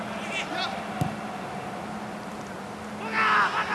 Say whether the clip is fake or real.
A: real